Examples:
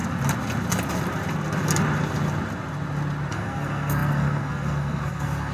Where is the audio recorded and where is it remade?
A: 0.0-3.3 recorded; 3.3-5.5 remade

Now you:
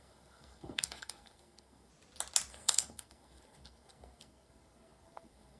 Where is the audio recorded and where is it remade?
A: 0.0-1.9 remade; 1.9-2.5 recorded; 2.5-5.6 remade

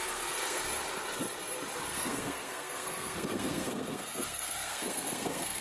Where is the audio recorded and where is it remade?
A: 0.0-0.6 remade; 0.6-1.9 recorded; 1.9-5.6 remade

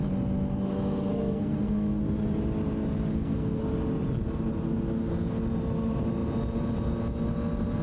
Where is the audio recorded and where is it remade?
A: 0.0-1.1 recorded; 1.1-2.0 remade; 2.0-3.1 recorded; 3.1-3.6 remade; 3.6-7.8 recorded

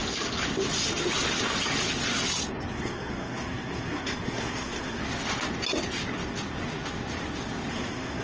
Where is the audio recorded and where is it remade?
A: 0.0-2.7 recorded; 2.7-5.0 remade; 5.0-7.7 recorded; 7.7-8.2 remade

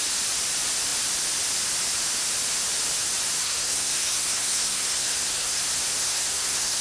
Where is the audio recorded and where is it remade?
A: 0.0-3.4 recorded; 3.4-5.6 remade; 5.6-6.0 recorded; 6.0-6.8 remade